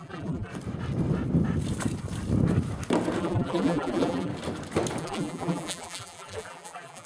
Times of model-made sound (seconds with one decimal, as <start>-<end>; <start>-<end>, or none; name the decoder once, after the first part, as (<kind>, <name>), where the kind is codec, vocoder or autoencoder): 0.0-0.5 (vocoder, BigVGAN v2); 3.2-4.3; 5.0-7.1